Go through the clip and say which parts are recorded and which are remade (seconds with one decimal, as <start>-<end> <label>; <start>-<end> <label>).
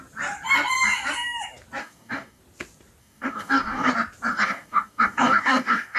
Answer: 0.0-1.8 recorded; 1.8-2.4 remade; 2.4-3.0 recorded; 3.0-3.9 remade; 3.9-4.3 recorded; 4.3-6.0 remade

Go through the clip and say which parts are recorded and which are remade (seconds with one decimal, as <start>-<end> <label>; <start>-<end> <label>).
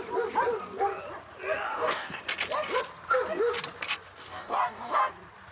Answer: 0.0-1.7 recorded; 1.7-2.2 remade; 2.2-4.2 recorded; 4.2-5.1 remade; 5.1-5.5 recorded